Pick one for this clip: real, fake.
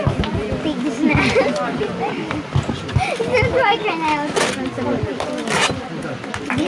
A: real